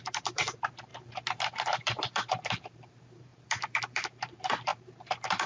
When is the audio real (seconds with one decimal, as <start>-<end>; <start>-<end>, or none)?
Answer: 0.9-1.4; 4.7-5.5